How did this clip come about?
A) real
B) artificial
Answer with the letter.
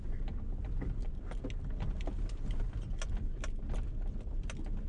A